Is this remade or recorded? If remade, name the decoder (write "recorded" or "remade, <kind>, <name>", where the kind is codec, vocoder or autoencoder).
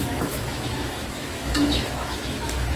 remade, autoencoder, DAC-VAE